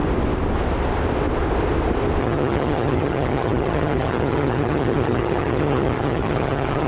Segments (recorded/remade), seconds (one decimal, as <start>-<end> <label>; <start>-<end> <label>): 0.0-2.2 recorded; 2.2-6.9 remade